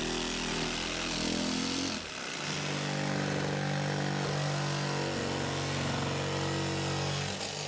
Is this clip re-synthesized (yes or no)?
no